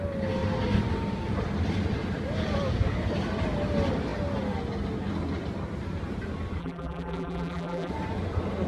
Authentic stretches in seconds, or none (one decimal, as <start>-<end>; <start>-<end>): 0.0-6.6; 7.9-8.7